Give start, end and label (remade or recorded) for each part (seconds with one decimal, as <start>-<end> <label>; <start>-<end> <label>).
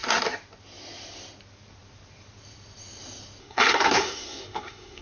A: 0.0-3.4 recorded; 3.4-5.0 remade